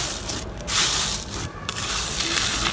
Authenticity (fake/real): fake